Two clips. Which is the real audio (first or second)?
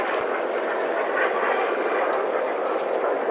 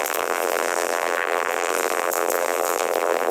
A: first